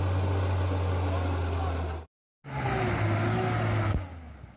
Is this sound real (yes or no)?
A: yes